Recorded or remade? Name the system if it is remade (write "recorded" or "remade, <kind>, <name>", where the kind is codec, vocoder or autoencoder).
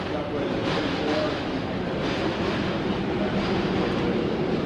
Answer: recorded